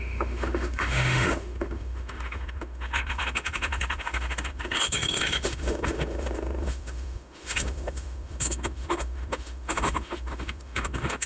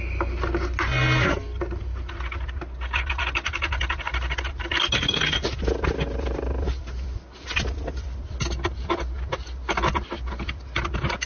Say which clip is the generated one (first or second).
first